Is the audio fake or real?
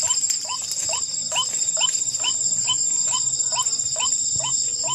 real